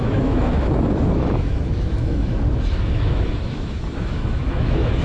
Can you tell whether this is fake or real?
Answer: fake